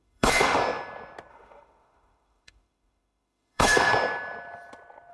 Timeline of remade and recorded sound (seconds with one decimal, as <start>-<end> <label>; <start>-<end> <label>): 0.0-0.6 remade; 0.6-1.3 recorded; 1.3-3.9 remade; 3.9-5.1 recorded